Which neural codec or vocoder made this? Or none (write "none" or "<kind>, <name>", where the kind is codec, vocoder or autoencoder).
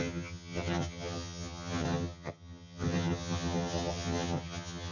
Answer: vocoder, HiFi-GAN